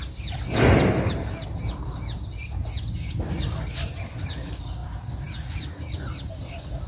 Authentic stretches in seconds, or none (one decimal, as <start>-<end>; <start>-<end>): 0.0-6.9